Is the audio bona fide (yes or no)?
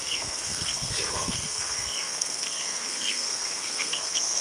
no